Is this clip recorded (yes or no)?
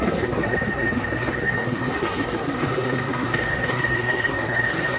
no